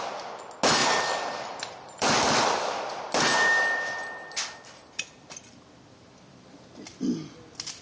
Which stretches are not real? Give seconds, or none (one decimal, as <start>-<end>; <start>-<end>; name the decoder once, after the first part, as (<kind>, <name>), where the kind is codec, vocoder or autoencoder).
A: 0.8-5.5 (vocoder, BigVGAN v2)